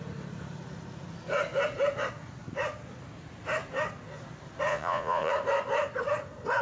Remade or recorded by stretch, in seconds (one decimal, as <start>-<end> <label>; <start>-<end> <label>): 0.0-4.7 recorded; 4.7-5.3 remade; 5.3-6.6 recorded